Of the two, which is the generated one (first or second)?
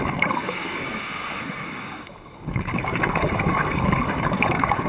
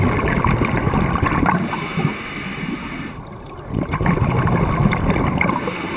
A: first